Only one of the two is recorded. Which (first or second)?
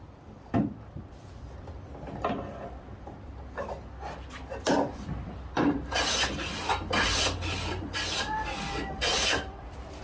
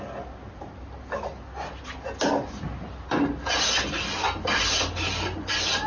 second